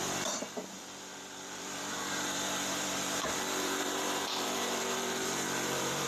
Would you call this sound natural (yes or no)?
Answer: no